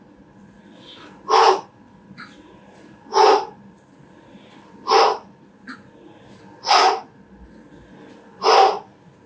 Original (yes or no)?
yes